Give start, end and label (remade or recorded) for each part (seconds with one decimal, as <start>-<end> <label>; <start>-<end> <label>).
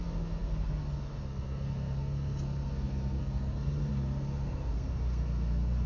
0.0-5.9 remade